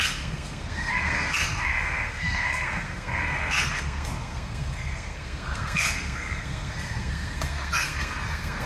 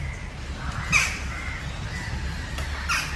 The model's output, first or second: first